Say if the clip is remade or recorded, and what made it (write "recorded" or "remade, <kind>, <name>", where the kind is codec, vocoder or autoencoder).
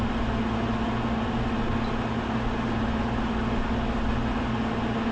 recorded